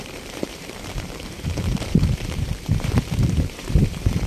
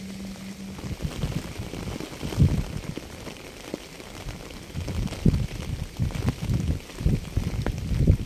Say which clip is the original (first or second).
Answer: second